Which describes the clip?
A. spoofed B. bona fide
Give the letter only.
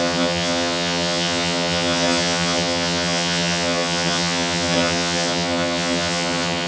A